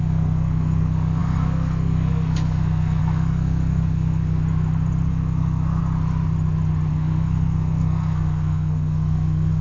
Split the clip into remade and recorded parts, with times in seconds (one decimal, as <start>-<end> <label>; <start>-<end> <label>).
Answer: 0.0-4.4 remade; 4.4-5.1 recorded; 5.1-5.8 remade; 5.8-6.9 recorded; 6.9-9.6 remade